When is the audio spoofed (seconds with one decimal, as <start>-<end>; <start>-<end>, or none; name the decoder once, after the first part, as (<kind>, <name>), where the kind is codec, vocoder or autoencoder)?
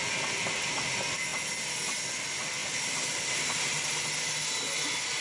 none